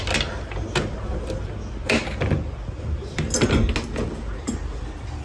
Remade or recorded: recorded